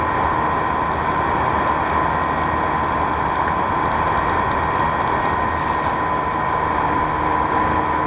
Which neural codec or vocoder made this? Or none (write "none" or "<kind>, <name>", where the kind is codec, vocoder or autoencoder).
none